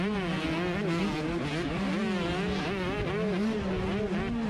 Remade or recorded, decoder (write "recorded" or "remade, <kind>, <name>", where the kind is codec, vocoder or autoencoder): recorded